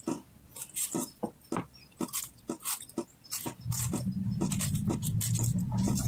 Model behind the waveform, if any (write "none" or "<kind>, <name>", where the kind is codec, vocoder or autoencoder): none